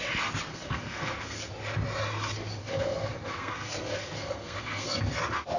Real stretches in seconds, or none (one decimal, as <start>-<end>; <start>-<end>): 0.0-0.5; 1.5-2.6; 5.0-5.6